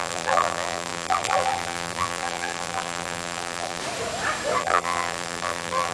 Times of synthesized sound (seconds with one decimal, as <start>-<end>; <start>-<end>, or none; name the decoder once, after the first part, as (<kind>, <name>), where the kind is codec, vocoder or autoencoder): 0.0-3.8 (vocoder, BigVGAN v2); 4.6-5.9